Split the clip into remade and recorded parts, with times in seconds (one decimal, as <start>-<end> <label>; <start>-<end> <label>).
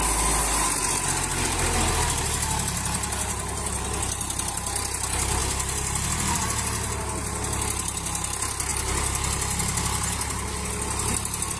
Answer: 0.0-1.3 recorded; 1.3-1.9 remade; 1.9-5.4 recorded; 5.4-6.4 remade; 6.4-11.6 recorded